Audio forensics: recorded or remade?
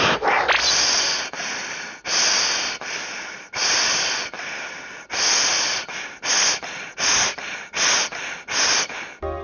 recorded